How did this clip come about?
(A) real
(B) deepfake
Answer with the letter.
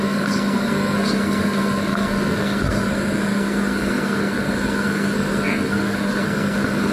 B